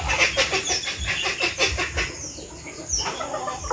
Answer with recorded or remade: recorded